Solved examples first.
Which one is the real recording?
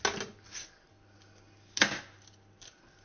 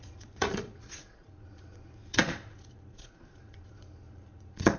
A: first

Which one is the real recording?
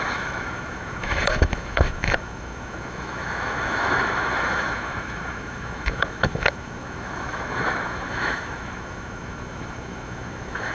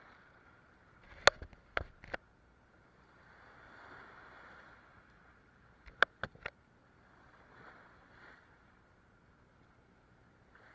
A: second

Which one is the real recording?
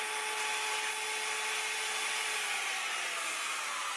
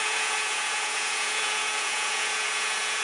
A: first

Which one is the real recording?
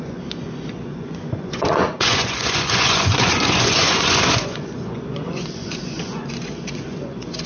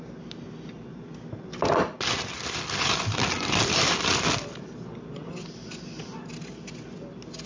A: second